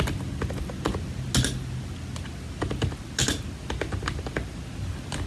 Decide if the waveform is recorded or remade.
recorded